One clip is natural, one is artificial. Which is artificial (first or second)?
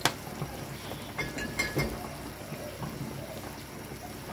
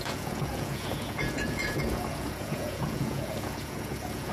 second